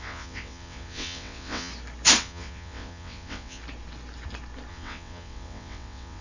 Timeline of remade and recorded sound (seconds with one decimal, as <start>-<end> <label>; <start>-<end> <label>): 0.0-1.7 remade; 1.7-2.2 recorded; 2.2-3.6 remade; 3.6-4.7 recorded; 4.7-6.2 remade